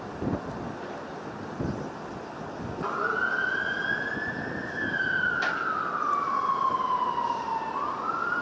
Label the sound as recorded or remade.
recorded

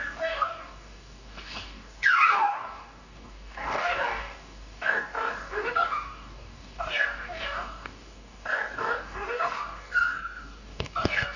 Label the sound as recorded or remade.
remade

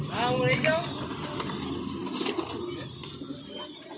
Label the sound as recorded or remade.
recorded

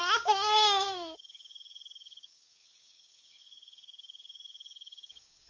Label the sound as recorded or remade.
remade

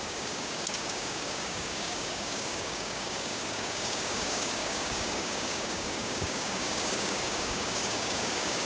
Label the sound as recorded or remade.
remade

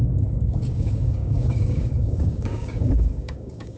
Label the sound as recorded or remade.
remade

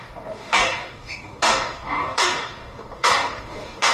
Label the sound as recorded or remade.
remade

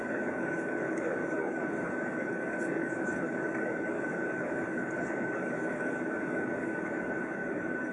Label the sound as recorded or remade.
remade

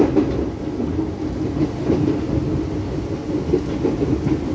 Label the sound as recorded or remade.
recorded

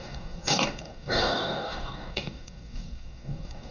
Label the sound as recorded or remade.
remade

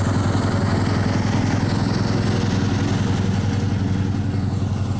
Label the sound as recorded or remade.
recorded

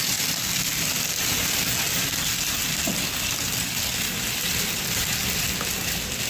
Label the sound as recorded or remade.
recorded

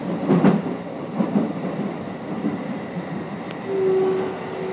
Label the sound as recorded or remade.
recorded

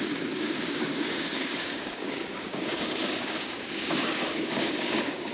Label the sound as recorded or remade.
remade